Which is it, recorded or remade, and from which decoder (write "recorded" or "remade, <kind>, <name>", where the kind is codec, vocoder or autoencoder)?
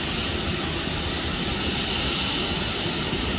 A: recorded